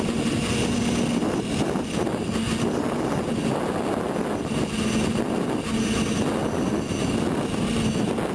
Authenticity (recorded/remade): recorded